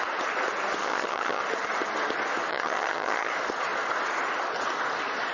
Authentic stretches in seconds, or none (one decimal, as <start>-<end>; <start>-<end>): 0.0-0.8; 1.4-2.5; 3.3-5.3